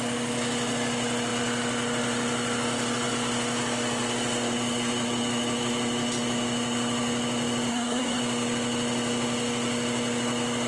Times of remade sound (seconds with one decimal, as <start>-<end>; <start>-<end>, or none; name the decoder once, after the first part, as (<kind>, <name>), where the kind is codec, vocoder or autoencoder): 7.7-8.2 (codec, SNAC)